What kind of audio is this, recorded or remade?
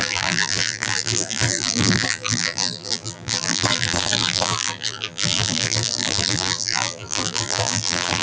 remade